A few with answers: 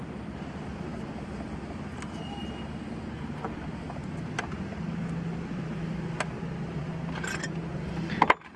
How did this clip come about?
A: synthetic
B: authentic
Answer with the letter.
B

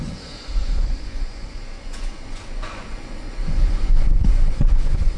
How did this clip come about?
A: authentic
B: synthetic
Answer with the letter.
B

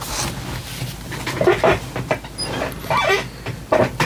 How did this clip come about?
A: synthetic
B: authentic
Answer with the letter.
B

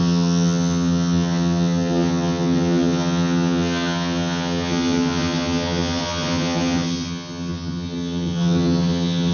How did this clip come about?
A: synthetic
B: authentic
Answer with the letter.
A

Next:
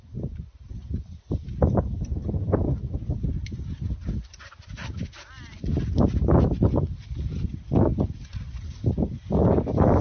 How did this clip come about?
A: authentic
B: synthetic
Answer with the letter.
A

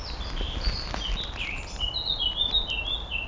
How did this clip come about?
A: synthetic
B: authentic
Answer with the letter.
B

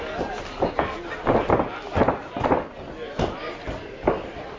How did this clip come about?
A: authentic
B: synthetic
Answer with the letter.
A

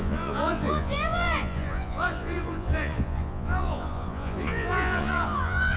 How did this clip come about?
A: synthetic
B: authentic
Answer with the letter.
A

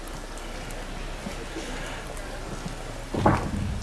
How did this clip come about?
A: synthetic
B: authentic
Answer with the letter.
B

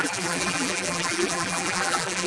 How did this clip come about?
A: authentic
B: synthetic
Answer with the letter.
B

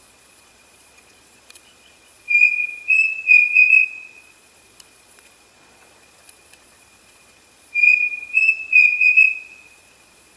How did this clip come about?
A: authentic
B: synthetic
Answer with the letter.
B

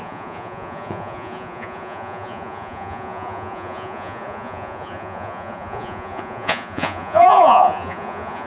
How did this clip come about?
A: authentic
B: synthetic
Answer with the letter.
B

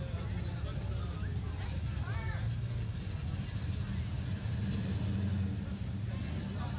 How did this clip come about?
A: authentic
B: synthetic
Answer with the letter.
A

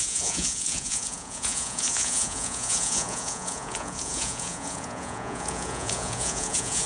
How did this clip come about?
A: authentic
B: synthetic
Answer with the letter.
B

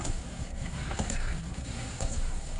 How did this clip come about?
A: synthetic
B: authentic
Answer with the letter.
A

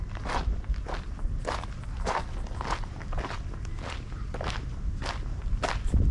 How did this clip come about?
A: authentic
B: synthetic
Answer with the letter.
A